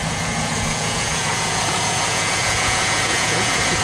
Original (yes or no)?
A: no